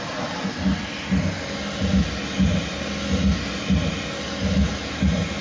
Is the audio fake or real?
real